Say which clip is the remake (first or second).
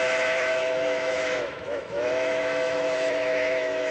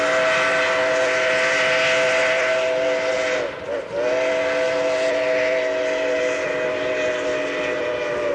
first